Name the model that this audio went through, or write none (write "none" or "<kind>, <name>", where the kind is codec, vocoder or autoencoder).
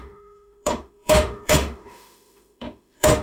autoencoder, DAC-VAE